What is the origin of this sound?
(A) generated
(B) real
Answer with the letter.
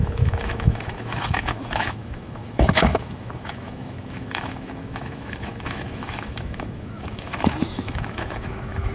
A